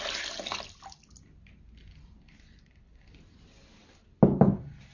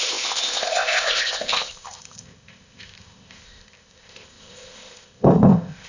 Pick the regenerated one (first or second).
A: second